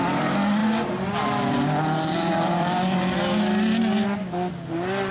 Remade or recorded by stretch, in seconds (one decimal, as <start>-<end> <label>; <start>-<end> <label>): 0.0-5.1 recorded